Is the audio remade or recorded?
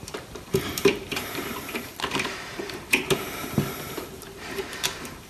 remade